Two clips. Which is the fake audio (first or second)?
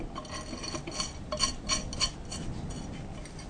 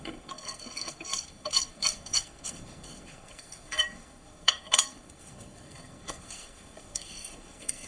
second